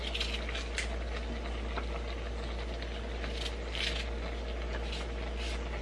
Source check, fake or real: real